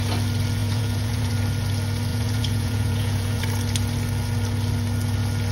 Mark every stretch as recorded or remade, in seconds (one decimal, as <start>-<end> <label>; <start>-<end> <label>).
0.0-0.6 recorded; 0.6-1.3 remade; 1.3-2.1 recorded; 2.1-3.4 remade; 3.4-5.5 recorded

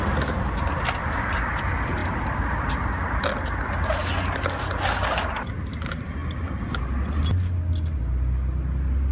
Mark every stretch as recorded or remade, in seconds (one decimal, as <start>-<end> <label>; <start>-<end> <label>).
0.0-9.1 recorded